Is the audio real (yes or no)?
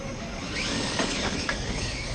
no